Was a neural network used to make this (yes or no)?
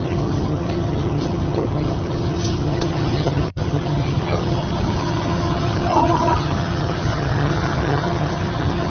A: yes